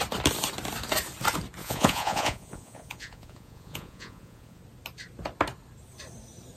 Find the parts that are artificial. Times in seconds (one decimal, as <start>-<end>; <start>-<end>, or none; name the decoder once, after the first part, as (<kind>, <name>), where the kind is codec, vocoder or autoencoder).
1.6-4.6 (vocoder, Vocos)